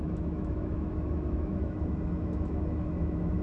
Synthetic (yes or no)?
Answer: yes